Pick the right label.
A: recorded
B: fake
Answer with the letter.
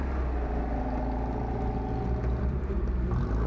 A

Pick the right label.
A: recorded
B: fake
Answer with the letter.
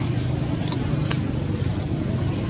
A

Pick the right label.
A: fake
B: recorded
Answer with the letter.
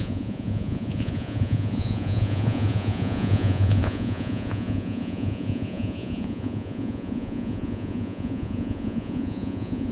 A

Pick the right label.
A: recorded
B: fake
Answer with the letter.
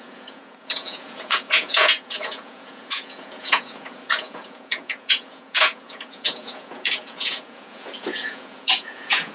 B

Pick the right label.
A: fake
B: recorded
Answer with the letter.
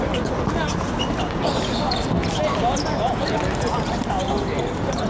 B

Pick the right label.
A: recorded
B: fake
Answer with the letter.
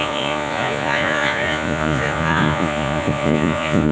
B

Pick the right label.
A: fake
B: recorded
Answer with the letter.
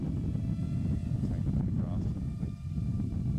B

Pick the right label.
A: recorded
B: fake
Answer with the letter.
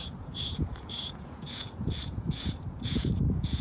B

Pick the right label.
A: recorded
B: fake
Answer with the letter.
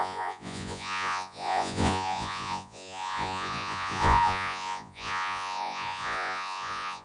B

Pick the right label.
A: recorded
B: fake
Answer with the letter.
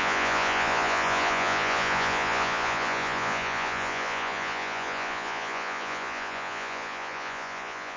B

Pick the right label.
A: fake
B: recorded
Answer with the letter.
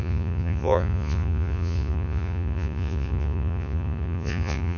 A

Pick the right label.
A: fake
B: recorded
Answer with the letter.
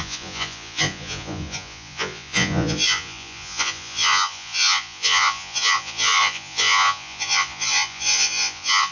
A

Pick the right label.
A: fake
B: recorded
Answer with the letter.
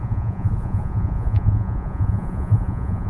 A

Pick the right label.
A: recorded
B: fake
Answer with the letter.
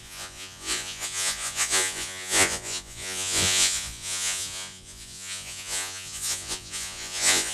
B